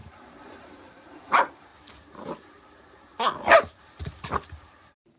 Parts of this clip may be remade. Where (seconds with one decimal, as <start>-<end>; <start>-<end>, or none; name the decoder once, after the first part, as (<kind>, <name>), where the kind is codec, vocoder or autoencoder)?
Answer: 0.0-1.7 (vocoder, BigVGAN v2); 4.6-5.2